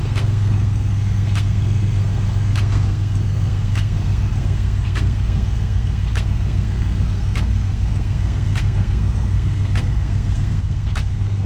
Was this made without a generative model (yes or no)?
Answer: no